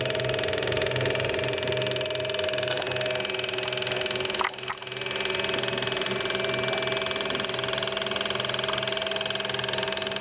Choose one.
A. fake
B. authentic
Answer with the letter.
B